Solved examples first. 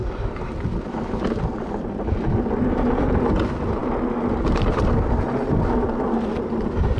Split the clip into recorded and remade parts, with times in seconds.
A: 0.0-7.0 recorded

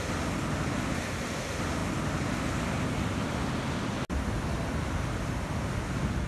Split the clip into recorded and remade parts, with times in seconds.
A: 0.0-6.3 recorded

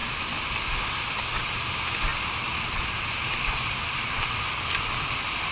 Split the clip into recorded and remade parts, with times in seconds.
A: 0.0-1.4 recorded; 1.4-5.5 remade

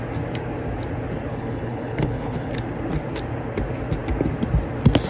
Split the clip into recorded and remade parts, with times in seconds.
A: 0.0-1.3 recorded; 1.3-2.5 remade; 2.5-5.1 recorded

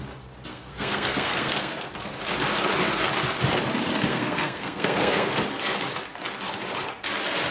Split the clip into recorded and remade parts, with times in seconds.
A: 0.0-0.5 recorded; 0.5-1.9 remade; 1.9-4.1 recorded; 4.1-5.4 remade; 5.4-7.5 recorded

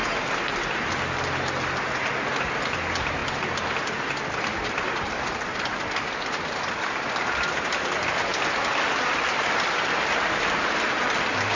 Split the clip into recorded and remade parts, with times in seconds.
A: 0.0-11.6 recorded